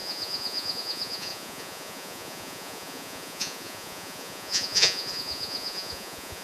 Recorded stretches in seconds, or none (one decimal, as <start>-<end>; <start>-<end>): none